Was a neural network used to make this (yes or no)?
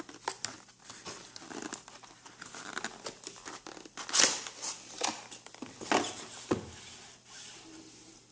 no